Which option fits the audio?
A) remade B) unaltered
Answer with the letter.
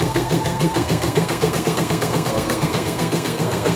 A